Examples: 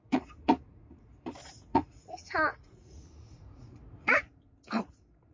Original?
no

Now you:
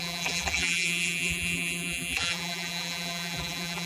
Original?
no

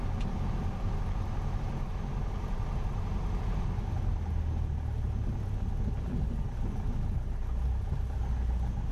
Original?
yes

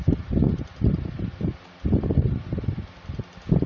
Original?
yes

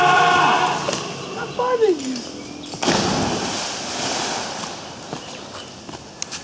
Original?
yes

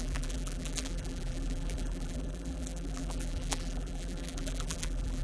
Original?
no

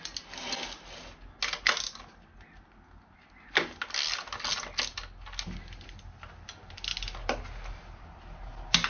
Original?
yes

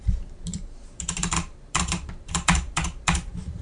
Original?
no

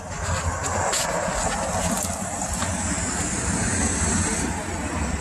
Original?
yes